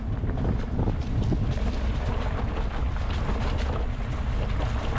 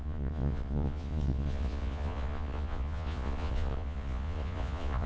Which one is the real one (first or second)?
first